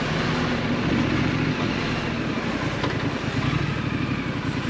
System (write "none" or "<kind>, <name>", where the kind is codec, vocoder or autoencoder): none